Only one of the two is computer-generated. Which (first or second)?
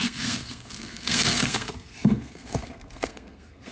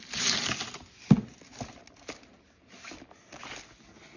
first